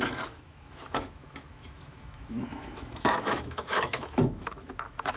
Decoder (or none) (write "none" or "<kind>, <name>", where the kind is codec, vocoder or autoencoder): autoencoder, DAC-VAE